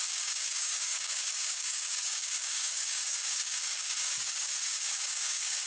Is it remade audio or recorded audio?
remade